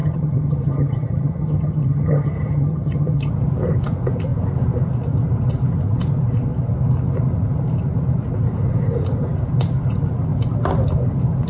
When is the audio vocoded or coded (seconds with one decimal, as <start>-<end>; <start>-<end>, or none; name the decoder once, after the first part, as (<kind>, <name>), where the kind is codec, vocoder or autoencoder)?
0.0-3.3 (vocoder, HiFi-GAN)